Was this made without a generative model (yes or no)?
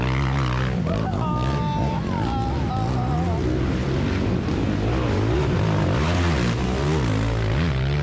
yes